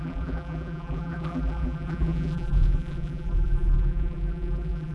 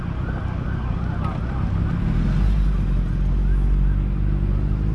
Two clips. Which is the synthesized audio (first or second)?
first